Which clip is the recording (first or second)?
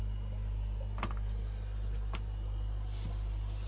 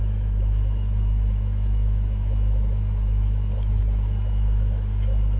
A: first